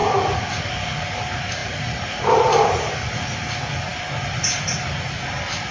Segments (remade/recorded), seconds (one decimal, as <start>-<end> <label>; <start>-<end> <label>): 0.0-1.6 recorded; 1.6-3.4 remade; 3.4-5.7 recorded